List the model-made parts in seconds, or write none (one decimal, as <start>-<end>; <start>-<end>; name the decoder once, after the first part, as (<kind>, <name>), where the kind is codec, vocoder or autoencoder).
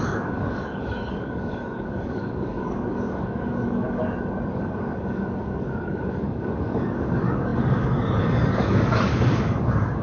0.0-4.0 (codec, DAC); 4.5-10.0